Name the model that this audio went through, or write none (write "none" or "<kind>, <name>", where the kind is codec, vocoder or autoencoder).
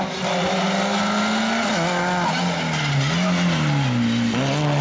none